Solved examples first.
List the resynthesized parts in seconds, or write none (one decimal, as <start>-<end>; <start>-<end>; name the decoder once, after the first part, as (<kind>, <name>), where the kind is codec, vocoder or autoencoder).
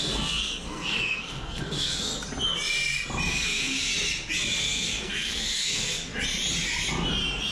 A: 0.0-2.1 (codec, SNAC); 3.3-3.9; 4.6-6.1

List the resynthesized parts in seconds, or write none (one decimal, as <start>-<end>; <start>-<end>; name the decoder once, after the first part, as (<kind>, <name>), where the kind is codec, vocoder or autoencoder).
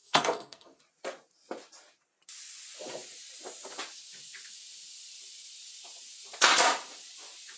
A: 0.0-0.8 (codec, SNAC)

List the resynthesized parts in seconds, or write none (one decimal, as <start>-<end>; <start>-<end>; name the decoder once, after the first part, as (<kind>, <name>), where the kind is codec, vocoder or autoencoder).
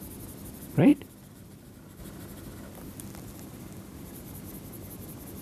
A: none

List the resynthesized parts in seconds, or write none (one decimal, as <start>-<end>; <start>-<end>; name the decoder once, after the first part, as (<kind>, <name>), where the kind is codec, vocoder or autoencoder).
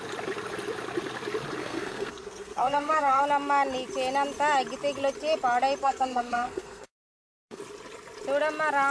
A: 1.6-3.2 (codec, SNAC); 5.8-7.6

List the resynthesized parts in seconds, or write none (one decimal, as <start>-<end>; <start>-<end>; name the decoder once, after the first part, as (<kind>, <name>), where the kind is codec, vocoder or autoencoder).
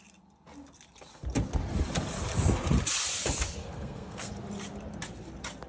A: 3.6-4.3 (codec, SNAC)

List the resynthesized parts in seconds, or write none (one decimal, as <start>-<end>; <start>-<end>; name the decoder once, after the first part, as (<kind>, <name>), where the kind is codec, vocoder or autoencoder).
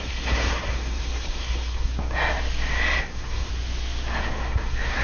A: 0.0-1.9 (codec, SNAC); 3.0-3.5; 4.2-5.0